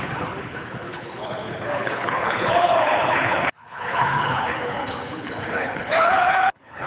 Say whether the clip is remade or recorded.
remade